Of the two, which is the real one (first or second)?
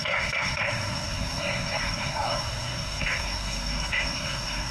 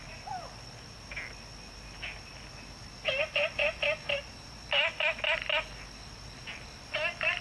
second